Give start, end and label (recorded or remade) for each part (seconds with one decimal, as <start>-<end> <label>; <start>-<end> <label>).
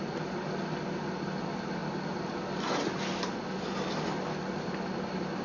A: 0.0-5.4 recorded